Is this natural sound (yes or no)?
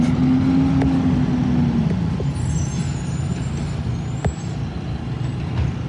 yes